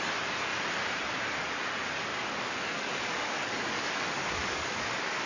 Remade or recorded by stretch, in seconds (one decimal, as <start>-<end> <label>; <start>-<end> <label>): 0.0-2.1 recorded; 2.1-5.3 remade

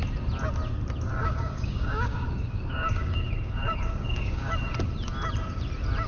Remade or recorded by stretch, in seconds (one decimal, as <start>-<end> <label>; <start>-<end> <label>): 0.0-1.2 recorded; 1.2-4.5 remade; 4.5-6.1 recorded

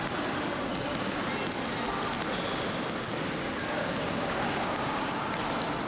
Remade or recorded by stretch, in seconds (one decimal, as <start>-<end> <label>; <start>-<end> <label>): 0.0-3.7 recorded; 3.7-5.1 remade; 5.1-5.9 recorded